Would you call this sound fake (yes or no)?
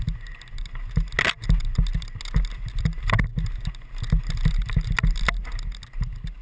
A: no